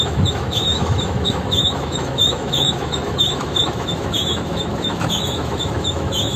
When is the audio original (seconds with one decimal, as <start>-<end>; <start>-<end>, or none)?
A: none